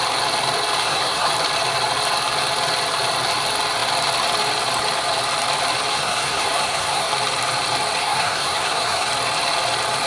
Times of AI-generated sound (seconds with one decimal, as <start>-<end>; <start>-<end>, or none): 0.8-1.3; 5.9-7.1; 8.0-9.1